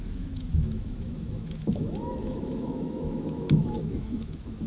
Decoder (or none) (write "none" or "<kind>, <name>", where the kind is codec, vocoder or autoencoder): autoencoder, DAC-VAE